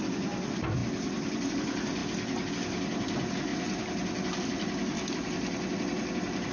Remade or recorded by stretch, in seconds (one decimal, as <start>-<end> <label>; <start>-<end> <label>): 0.0-6.5 recorded